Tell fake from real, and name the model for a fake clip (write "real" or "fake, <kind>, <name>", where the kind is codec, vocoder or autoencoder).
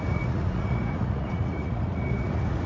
fake, vocoder, Vocos